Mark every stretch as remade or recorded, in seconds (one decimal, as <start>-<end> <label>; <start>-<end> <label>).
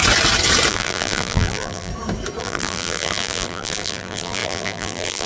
0.0-0.7 recorded; 0.7-1.9 remade; 1.9-2.4 recorded; 2.4-5.3 remade